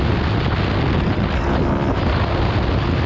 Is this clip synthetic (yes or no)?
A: no